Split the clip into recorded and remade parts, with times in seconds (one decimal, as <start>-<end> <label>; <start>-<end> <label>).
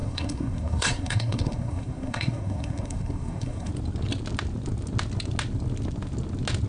0.0-3.7 remade; 3.7-6.7 recorded